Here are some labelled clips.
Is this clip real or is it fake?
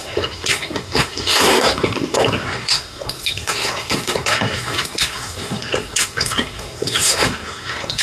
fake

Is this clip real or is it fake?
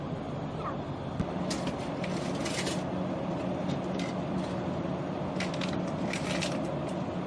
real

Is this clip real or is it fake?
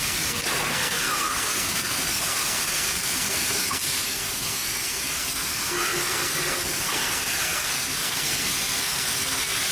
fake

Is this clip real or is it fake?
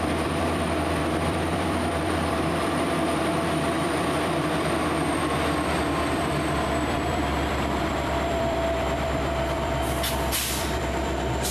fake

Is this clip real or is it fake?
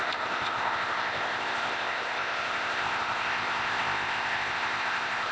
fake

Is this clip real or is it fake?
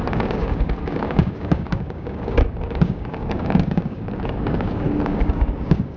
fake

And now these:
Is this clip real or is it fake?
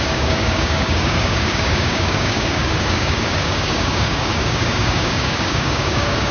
fake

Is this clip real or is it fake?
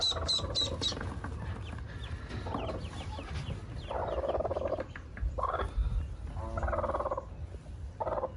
real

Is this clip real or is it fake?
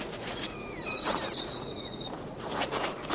fake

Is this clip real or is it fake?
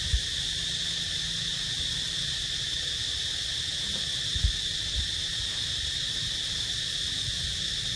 real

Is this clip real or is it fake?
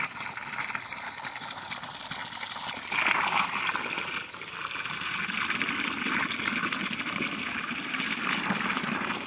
real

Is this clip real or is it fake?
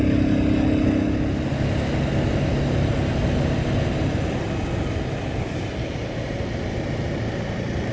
real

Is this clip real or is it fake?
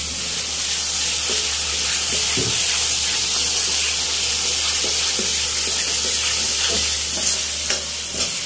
real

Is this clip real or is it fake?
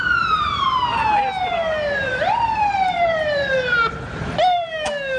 fake